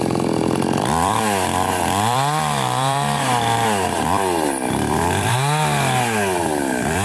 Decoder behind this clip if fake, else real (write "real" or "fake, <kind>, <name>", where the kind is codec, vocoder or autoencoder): fake, vocoder, BigVGAN v2